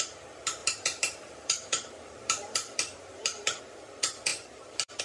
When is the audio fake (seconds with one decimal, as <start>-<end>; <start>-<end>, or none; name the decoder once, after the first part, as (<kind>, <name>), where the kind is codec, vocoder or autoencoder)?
0.6-3.6 (vocoder, BigVGAN v2); 4.3-5.0

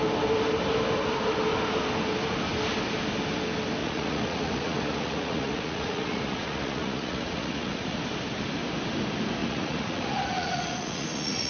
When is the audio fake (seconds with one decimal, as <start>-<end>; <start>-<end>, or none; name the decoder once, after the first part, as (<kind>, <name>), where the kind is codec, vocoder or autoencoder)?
3.8-8.0 (vocoder, Vocos); 9.4-11.5